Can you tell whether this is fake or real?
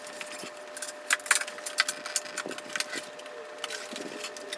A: real